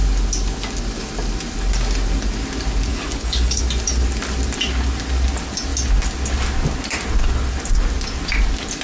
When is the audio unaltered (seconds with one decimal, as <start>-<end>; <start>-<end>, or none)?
0.0-2.9; 3.6-8.8